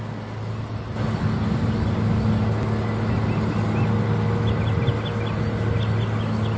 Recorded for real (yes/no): yes